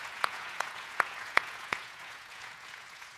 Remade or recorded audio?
remade